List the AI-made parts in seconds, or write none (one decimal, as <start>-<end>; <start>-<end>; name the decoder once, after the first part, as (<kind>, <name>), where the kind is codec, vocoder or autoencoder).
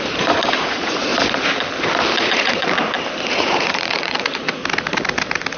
0.0-1.1 (vocoder, Vocos); 2.2-2.6; 3.3-4.6